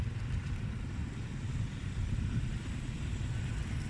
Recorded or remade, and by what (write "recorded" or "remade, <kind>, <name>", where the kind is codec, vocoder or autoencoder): recorded